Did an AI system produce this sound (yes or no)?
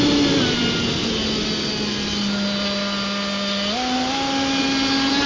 no